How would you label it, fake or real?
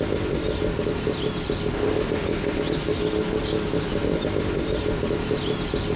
real